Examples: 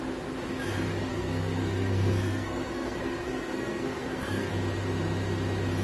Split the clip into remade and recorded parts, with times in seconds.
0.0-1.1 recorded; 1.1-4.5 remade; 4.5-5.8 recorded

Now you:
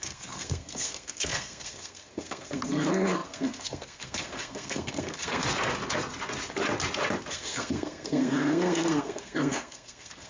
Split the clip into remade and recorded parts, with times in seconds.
0.0-5.4 remade; 5.4-7.3 recorded; 7.3-10.3 remade

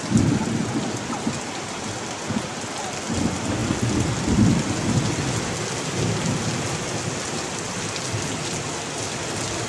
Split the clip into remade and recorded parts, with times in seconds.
0.0-9.7 recorded

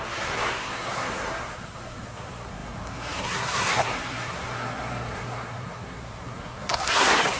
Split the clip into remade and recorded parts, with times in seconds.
0.0-7.4 remade

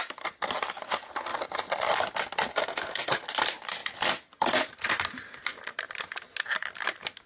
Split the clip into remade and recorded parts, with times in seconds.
0.0-2.5 recorded; 2.5-3.1 remade; 3.1-7.3 recorded

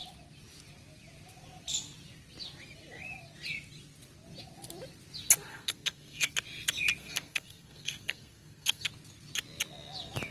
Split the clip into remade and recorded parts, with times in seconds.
0.0-5.5 recorded; 5.5-6.3 remade; 6.3-7.0 recorded; 7.0-8.9 remade; 8.9-10.3 recorded